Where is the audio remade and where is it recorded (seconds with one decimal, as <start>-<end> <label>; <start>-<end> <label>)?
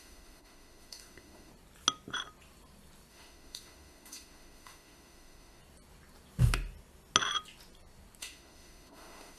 0.0-1.5 remade; 1.5-3.1 recorded; 3.1-5.6 remade; 5.6-8.2 recorded; 8.2-9.4 remade